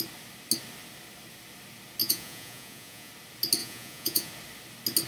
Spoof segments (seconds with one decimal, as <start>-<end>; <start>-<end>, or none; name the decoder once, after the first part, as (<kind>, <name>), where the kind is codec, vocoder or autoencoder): 2.0-3.1 (vocoder, Vocos); 3.6-4.3